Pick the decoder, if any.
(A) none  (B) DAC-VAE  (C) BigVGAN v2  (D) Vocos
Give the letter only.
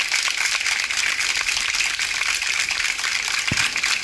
A